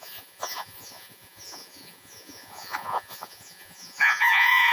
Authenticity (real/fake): fake